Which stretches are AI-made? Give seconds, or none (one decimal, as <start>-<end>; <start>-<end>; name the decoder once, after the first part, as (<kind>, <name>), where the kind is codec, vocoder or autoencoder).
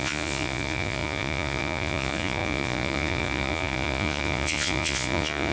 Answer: 0.0-5.5 (vocoder, Vocos)